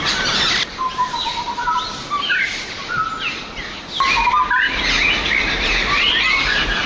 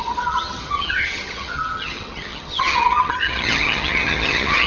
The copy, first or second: second